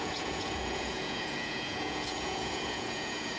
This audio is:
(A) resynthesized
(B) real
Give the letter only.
A